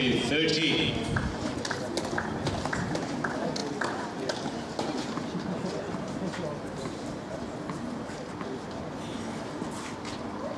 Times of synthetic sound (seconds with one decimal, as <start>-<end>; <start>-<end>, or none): none